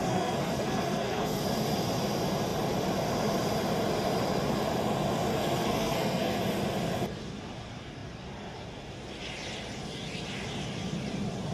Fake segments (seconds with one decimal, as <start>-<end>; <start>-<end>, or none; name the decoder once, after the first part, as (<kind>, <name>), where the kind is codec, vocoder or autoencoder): 0.0-1.4 (codec, SNAC); 5.3-6.4